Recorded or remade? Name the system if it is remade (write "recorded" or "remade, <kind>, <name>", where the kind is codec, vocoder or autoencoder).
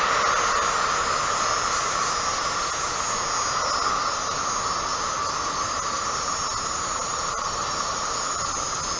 recorded